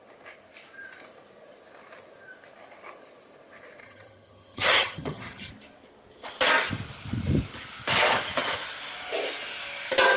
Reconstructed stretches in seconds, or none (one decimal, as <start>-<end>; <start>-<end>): 3.8-5.5